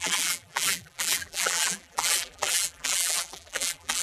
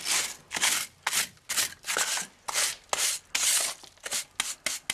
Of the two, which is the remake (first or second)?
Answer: first